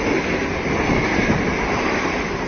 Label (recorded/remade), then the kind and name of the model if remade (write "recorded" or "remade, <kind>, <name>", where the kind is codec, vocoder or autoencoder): recorded